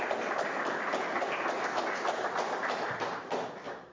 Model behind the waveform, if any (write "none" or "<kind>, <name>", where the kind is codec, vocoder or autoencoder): none